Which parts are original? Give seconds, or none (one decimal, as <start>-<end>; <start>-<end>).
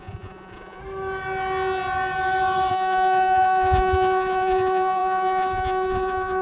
0.8-2.7